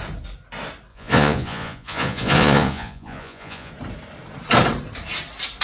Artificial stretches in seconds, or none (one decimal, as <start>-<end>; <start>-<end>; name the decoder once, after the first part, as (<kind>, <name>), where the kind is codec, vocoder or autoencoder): 0.9-3.7 (vocoder, Vocos)